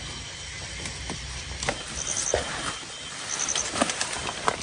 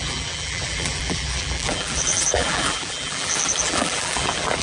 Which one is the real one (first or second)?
first